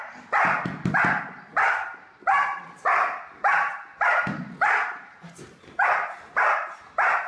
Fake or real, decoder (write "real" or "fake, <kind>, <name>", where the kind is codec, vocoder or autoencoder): real